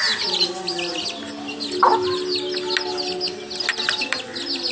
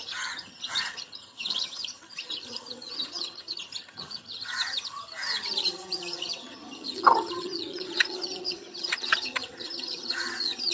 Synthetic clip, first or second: second